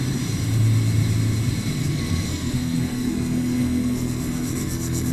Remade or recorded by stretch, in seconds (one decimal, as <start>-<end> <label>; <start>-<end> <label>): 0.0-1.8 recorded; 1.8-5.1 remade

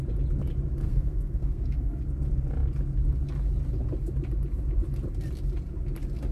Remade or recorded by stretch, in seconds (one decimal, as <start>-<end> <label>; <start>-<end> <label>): 0.0-0.8 recorded; 0.8-2.0 remade; 2.0-6.3 recorded

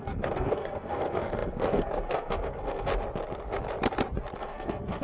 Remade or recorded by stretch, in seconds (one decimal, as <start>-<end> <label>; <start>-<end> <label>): 0.0-2.9 remade; 2.9-4.4 recorded; 4.4-5.0 remade

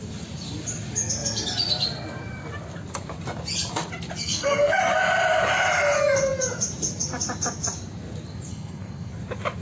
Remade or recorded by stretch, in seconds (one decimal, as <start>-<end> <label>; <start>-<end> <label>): 0.0-4.2 recorded; 4.2-4.8 remade; 4.8-8.5 recorded; 8.5-9.1 remade; 9.1-9.6 recorded